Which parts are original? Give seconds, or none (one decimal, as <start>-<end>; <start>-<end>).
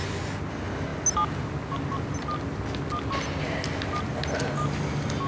0.0-5.3